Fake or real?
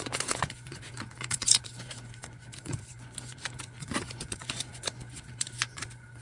fake